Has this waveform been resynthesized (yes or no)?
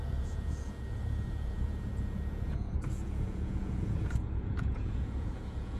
yes